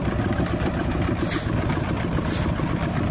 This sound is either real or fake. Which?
real